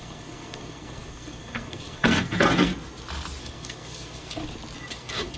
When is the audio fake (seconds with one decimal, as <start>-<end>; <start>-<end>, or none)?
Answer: 0.0-2.7; 3.4-4.4; 4.9-5.4